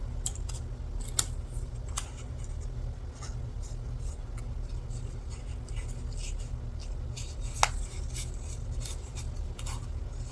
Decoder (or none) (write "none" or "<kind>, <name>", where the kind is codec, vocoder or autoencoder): none